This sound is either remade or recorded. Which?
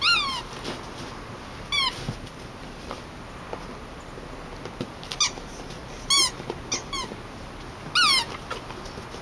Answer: recorded